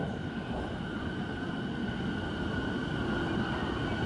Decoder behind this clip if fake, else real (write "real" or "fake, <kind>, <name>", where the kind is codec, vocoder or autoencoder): real